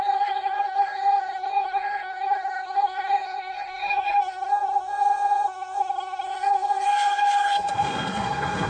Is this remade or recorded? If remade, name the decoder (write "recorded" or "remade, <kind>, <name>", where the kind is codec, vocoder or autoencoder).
remade, codec, SNAC